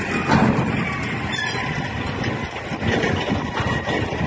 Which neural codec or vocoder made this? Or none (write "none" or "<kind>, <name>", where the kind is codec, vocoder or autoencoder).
none